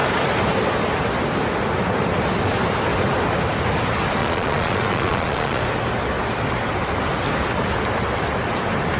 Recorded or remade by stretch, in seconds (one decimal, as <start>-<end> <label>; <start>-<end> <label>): 0.0-4.2 recorded; 4.2-5.6 remade; 5.6-9.0 recorded